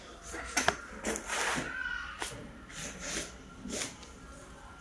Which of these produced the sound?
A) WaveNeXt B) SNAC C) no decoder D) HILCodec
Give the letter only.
C